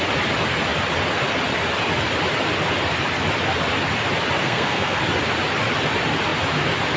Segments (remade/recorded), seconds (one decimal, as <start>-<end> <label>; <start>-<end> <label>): 0.0-4.4 recorded; 4.4-5.0 remade; 5.0-7.0 recorded